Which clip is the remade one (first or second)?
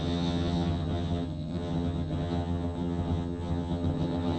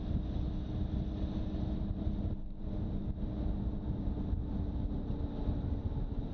first